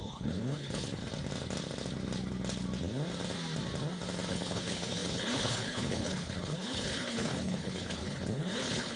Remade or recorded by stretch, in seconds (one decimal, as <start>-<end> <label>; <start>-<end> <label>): 0.0-1.0 remade; 1.0-4.3 recorded; 4.3-9.0 remade